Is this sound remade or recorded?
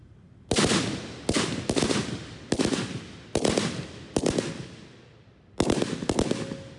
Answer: recorded